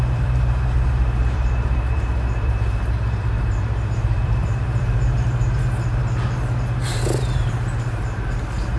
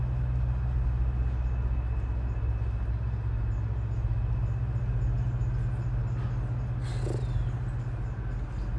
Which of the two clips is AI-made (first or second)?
first